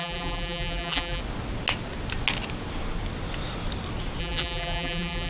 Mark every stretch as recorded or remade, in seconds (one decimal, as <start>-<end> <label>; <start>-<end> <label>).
0.0-1.2 remade; 1.2-4.2 recorded; 4.2-5.3 remade